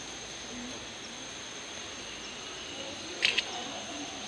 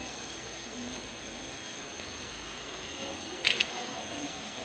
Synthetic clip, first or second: second